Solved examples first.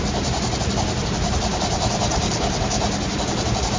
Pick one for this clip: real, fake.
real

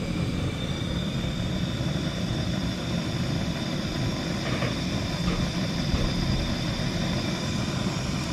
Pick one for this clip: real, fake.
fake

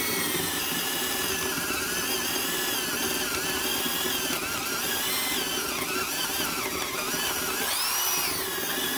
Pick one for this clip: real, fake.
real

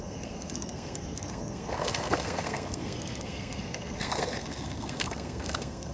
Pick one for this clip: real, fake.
fake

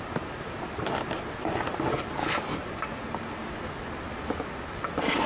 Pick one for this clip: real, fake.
real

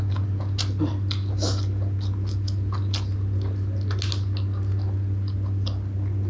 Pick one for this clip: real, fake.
real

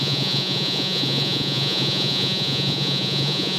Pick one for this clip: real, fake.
fake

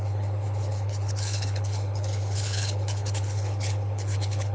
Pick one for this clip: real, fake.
fake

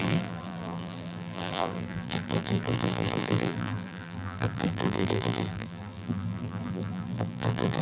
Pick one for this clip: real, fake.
fake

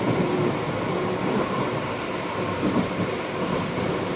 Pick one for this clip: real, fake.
fake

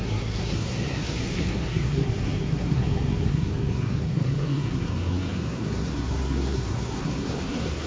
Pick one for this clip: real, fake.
fake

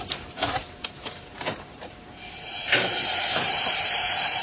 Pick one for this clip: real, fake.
fake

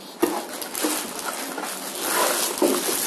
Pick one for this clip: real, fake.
real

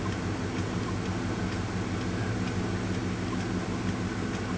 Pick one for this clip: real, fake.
real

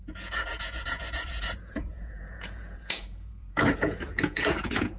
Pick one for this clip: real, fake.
fake